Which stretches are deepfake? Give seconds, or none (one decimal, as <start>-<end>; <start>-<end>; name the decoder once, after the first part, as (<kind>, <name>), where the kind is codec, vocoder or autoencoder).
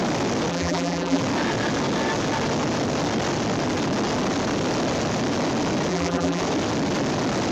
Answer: 0.5-1.2 (vocoder, BigVGAN v2); 5.9-6.4